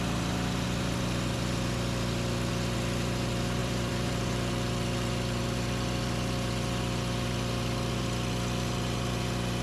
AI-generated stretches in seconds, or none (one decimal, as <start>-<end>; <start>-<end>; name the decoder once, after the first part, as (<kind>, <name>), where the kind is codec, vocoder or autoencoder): 3.6-4.5 (vocoder, BigVGAN v2)